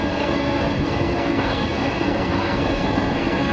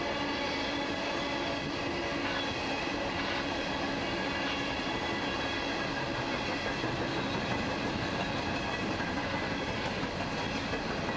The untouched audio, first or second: second